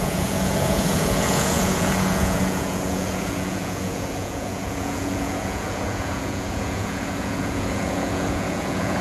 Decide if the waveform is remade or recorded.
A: remade